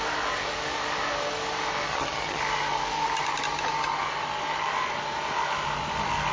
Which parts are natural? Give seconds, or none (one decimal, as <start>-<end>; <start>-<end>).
0.0-1.9; 2.4-6.3